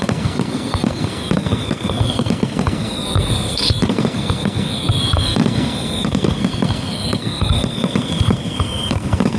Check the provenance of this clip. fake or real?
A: fake